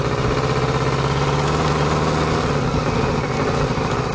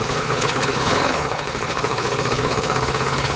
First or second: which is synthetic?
second